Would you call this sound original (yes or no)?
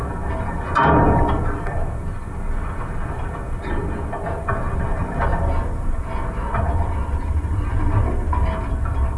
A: yes